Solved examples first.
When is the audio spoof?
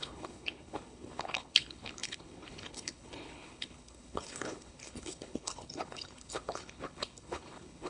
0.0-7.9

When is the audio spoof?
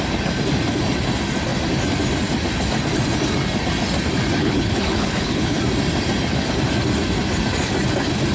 4.4-5.6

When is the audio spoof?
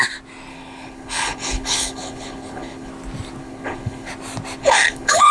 0.5-2.9; 3.4-4.1; 4.6-5.3